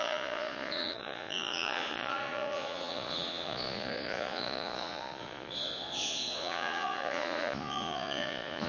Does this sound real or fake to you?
fake